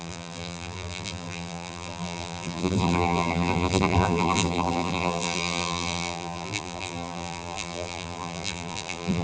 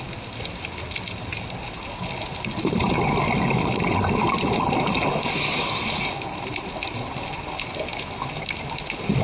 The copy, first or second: first